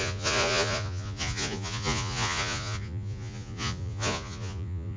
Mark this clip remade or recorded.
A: remade